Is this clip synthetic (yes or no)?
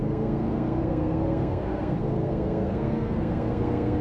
yes